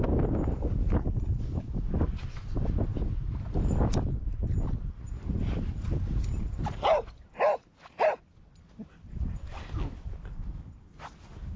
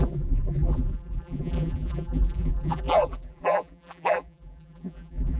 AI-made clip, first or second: second